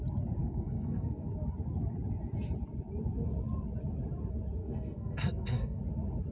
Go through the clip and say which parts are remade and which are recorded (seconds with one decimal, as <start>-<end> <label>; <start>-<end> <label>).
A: 0.0-0.4 recorded; 0.4-1.3 remade; 1.3-4.6 recorded; 4.6-5.8 remade; 5.8-6.3 recorded